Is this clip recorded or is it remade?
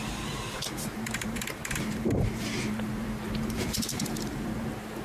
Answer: remade